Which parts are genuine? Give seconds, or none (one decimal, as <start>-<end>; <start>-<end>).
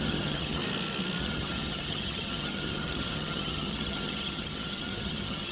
0.6-1.2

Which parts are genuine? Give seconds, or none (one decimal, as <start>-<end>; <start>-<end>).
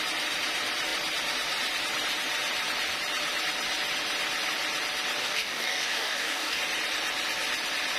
0.0-5.2; 6.6-8.0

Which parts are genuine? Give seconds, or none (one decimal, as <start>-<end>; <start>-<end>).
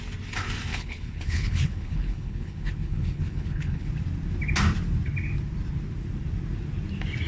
0.0-0.7; 3.9-7.3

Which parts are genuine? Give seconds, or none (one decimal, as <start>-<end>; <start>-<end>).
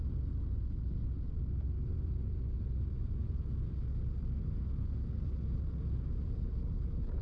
0.0-6.2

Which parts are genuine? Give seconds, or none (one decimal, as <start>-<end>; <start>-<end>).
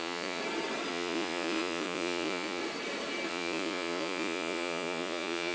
0.4-0.9; 2.6-3.3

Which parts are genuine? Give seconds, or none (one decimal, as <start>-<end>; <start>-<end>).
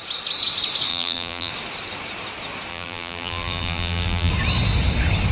0.0-0.9; 1.5-2.7; 4.3-5.3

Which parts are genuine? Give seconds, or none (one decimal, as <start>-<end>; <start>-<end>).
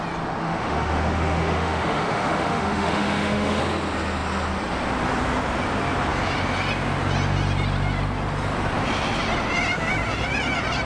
0.0-0.4; 3.6-10.9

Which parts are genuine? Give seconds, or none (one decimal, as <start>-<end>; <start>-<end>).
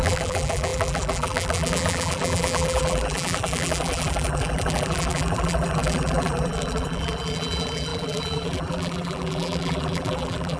none